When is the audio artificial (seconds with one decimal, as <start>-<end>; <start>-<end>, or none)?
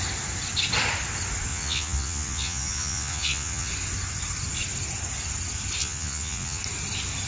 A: 1.5-3.7; 5.8-6.6